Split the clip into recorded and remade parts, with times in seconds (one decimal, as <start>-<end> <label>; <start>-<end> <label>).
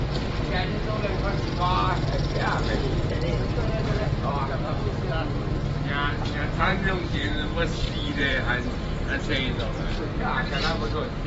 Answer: 0.0-2.9 recorded; 2.9-4.8 remade; 4.8-6.7 recorded; 6.7-8.4 remade; 8.4-11.3 recorded